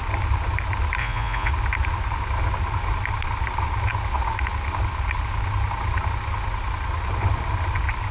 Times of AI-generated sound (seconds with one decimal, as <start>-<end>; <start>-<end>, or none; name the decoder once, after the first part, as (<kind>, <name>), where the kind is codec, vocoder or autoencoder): 1.0-1.5 (vocoder, Vocos)